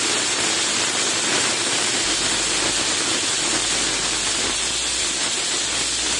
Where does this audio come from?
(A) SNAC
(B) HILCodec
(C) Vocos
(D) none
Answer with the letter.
D